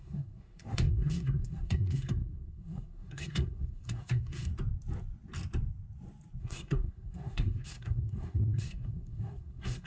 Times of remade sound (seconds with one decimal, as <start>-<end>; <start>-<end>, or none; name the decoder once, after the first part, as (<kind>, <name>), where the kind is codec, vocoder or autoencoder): 0.0-4.5 (codec, SNAC); 6.4-9.9